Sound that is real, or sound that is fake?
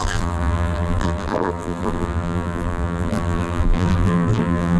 fake